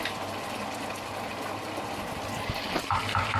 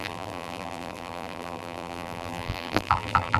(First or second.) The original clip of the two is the first